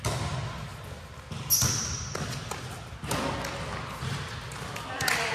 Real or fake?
real